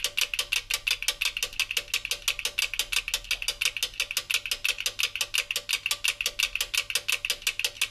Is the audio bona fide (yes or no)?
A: yes